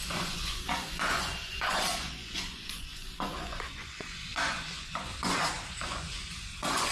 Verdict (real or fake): fake